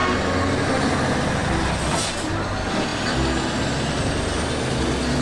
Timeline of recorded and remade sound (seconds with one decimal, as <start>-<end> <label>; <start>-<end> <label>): 0.0-5.2 recorded